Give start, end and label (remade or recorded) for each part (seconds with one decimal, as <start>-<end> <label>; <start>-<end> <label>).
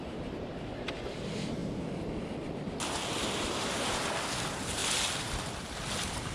0.0-1.6 remade; 1.6-4.3 recorded; 4.3-4.8 remade; 4.8-6.3 recorded